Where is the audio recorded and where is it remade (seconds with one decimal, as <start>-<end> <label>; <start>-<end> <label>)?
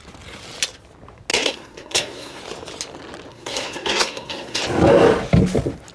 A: 0.0-1.3 recorded; 1.3-2.4 remade; 2.4-3.3 recorded; 3.3-4.6 remade; 4.6-5.9 recorded